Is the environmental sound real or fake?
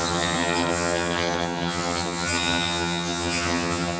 fake